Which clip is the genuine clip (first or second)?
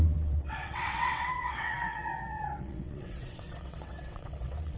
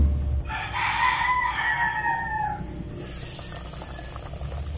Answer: second